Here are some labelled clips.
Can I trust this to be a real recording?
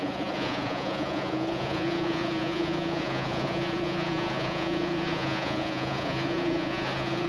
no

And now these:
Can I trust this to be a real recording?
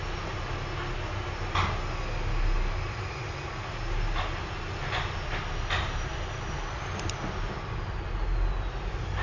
yes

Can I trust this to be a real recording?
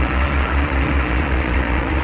no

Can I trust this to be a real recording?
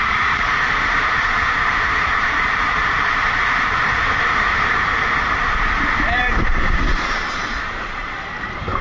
no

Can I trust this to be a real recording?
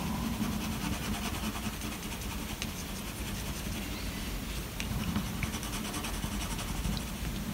yes